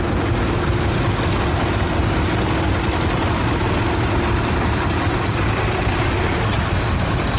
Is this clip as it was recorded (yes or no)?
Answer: yes